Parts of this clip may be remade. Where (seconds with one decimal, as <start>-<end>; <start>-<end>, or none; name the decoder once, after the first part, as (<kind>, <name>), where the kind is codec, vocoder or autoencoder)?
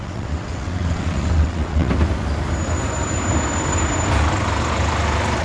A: 0.0-1.9 (vocoder, WaveNeXt)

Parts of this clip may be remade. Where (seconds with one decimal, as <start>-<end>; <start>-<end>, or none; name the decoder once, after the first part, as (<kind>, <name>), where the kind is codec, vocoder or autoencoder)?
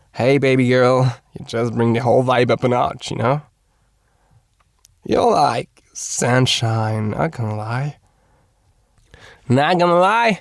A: 0.0-1.2 (vocoder, BigVGAN v2); 2.6-6.0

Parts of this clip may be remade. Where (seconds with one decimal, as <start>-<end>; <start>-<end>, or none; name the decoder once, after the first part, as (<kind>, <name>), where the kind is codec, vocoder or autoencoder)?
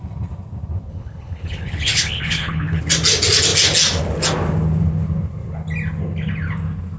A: 0.9-2.8 (codec, HILCodec)